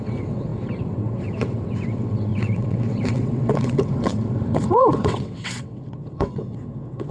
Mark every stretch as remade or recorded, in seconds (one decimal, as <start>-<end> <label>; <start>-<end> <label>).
0.0-7.1 remade